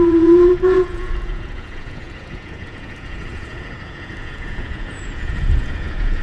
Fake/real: fake